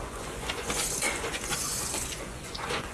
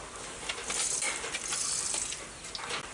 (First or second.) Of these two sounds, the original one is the second